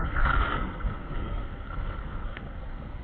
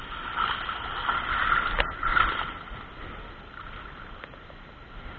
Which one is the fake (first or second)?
first